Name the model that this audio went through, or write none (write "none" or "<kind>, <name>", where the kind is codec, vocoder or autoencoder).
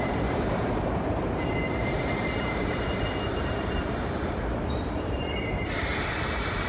vocoder, BigVGAN v2